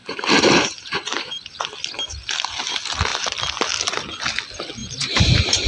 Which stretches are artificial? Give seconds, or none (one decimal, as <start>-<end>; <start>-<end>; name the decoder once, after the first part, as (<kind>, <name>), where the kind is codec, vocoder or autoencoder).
0.0-1.6 (vocoder, BigVGAN v2); 4.8-5.7